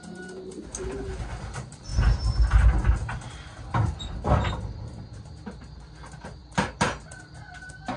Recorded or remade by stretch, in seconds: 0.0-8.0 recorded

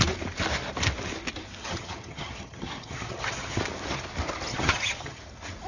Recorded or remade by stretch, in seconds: 0.0-1.6 recorded; 1.6-3.6 remade; 3.6-4.5 recorded; 4.5-5.2 remade; 5.2-5.7 recorded

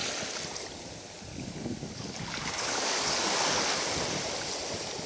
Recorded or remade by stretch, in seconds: 0.0-1.3 recorded; 1.3-3.6 remade; 3.6-5.1 recorded

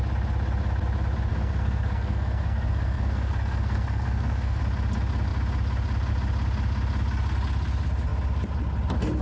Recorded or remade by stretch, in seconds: 0.0-1.3 recorded; 1.3-4.6 remade; 4.6-9.2 recorded

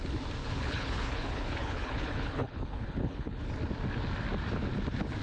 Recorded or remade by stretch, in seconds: 0.0-0.4 recorded; 0.4-3.5 remade; 3.5-5.2 recorded

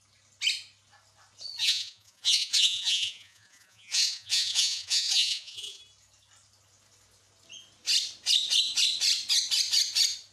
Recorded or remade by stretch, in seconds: 0.0-1.6 recorded; 1.6-5.8 remade; 5.8-10.3 recorded

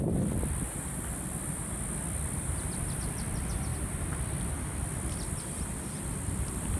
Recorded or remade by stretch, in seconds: 0.0-6.8 recorded

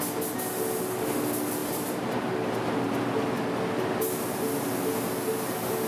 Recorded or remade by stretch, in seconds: 0.0-1.6 recorded; 1.6-2.6 remade; 2.6-5.9 recorded